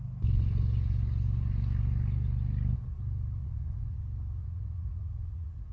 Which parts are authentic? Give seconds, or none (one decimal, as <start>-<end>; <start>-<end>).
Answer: 0.0-3.4; 4.0-4.4